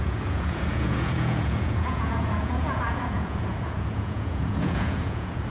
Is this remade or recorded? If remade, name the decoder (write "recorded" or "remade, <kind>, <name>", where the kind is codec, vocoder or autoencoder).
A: remade, vocoder, Vocos